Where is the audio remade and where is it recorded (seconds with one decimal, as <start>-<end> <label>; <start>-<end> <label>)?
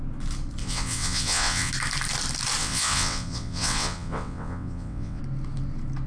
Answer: 0.0-0.6 recorded; 0.6-1.7 remade; 1.7-2.6 recorded; 2.6-5.2 remade; 5.2-6.1 recorded